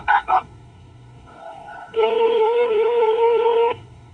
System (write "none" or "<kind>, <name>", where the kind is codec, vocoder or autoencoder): codec, SNAC